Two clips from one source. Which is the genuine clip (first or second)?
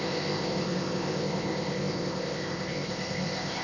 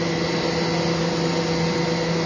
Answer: second